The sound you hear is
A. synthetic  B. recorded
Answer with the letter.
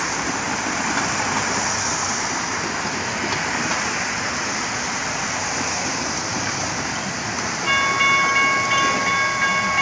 B